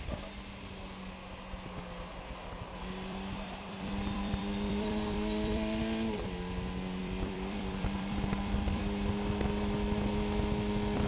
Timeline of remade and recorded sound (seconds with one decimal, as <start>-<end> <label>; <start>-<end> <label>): 0.0-2.7 recorded; 2.7-5.8 remade; 5.8-7.0 recorded; 7.0-8.8 remade; 8.8-11.1 recorded